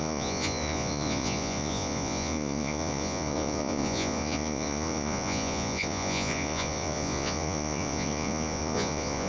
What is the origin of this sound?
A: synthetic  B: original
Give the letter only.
A